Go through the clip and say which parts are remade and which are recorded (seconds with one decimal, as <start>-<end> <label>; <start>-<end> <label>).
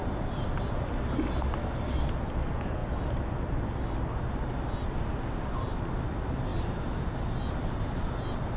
0.0-8.6 recorded